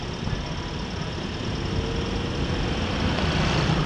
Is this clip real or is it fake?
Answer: real